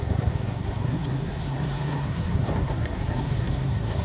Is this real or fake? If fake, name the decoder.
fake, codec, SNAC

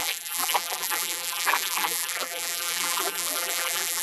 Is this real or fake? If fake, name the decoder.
fake, vocoder, BigVGAN v2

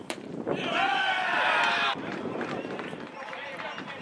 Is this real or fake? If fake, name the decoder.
fake, vocoder, BigVGAN v2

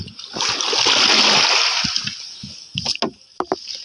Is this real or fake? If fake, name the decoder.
real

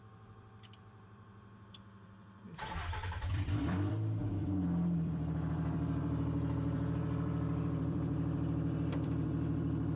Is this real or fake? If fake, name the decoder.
fake, vocoder, BigVGAN v2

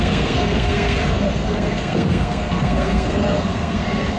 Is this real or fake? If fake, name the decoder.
fake, codec, SNAC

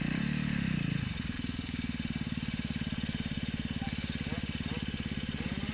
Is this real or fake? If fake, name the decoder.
real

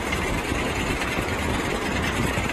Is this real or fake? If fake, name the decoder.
fake, vocoder, BigVGAN v2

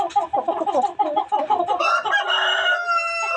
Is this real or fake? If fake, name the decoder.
real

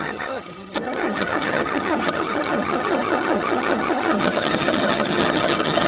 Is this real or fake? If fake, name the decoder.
fake, vocoder, HiFi-GAN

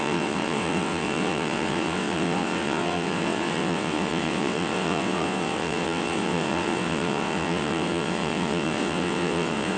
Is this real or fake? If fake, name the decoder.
fake, vocoder, WaveNeXt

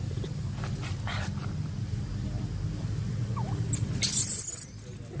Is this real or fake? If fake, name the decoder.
real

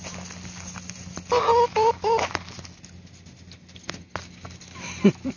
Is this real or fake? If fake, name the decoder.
real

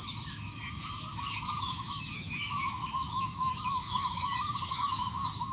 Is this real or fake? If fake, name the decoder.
fake, autoencoder, DAC-VAE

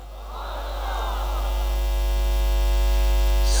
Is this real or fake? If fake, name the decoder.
real